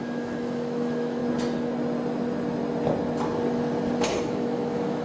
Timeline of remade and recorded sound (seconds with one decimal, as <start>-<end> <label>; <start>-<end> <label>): 0.0-1.2 remade; 1.2-4.2 recorded; 4.2-5.0 remade